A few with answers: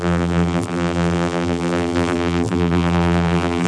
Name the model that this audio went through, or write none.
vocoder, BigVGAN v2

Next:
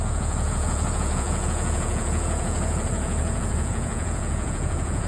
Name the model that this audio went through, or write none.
vocoder, Vocos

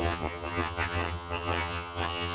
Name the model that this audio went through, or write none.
vocoder, HiFi-GAN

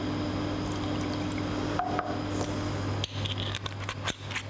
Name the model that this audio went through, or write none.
none